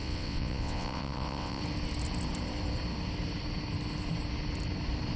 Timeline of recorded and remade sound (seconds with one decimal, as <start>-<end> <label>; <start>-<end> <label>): 0.0-1.6 remade; 1.6-5.2 recorded

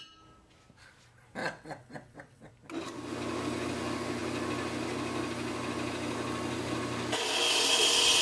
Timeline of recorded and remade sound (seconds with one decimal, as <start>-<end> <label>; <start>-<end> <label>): 0.0-1.4 recorded; 1.4-2.5 remade; 2.5-8.2 recorded

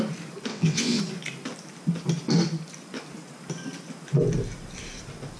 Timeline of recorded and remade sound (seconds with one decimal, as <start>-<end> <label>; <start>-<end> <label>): 0.0-0.5 recorded; 0.5-1.0 remade; 1.0-5.4 recorded

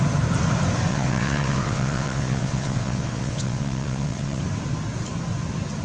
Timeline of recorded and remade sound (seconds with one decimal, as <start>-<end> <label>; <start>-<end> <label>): 0.0-0.9 recorded; 0.9-4.4 remade; 4.4-5.8 recorded

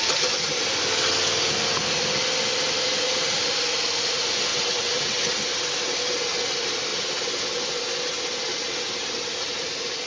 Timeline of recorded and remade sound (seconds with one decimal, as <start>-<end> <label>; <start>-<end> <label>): 0.0-4.5 recorded; 4.5-5.3 remade; 5.3-10.1 recorded

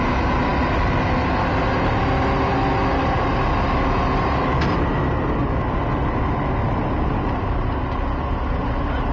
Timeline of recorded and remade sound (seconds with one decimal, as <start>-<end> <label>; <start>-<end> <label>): 0.0-9.1 recorded